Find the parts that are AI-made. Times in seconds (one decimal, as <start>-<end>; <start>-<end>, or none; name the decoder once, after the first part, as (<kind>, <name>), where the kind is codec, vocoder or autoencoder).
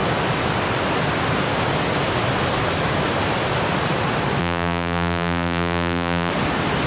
4.4-6.3 (vocoder, BigVGAN v2)